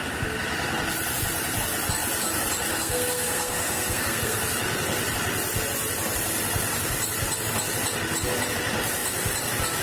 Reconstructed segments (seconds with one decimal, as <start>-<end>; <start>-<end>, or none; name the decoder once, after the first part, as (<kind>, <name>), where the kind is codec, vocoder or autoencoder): 2.7-4.4 (codec, SNAC)

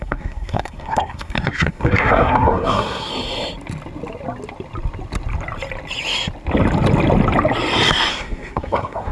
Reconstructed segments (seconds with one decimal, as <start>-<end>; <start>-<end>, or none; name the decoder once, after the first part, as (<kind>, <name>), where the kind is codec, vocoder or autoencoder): 0.0-3.1 (codec, SNAC); 8.1-9.1

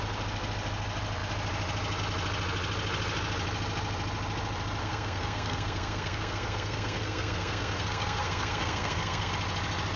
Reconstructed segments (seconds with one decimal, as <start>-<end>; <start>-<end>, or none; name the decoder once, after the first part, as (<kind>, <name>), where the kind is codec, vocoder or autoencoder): 4.8-9.3 (codec, SNAC)

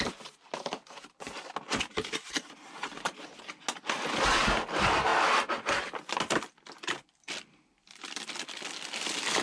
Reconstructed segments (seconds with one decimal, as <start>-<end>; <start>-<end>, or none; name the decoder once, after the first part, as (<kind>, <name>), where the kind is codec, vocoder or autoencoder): none

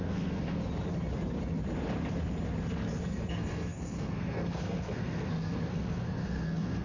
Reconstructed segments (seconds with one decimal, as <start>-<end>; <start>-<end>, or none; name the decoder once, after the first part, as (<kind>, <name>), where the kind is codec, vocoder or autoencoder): 0.0-0.6 (codec, SNAC); 3.3-6.8

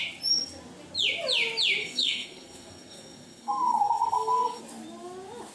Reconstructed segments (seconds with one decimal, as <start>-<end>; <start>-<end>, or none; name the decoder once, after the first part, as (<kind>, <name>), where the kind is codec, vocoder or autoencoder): 1.8-4.6 (codec, SNAC)

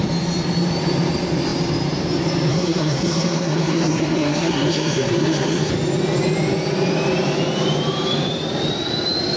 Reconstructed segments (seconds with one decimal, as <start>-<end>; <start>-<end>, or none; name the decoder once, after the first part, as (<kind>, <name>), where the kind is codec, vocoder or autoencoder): 2.5-5.7 (codec, SNAC)